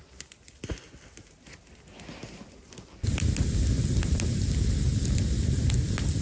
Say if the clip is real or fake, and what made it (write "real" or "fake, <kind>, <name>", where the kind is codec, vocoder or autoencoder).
real